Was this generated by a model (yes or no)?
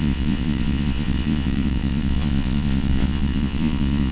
yes